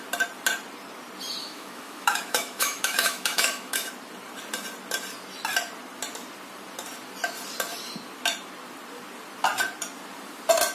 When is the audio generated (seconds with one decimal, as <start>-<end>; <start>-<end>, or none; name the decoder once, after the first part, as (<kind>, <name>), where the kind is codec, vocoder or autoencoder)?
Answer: 1.4-3.9 (autoencoder, DAC-VAE)